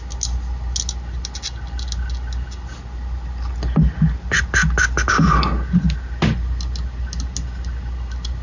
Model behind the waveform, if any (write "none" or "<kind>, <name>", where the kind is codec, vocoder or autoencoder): none